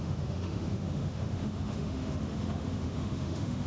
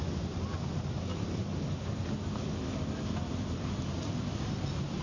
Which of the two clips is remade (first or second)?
first